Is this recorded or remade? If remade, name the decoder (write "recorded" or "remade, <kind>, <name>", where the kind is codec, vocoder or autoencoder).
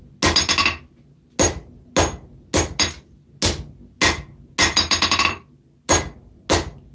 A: recorded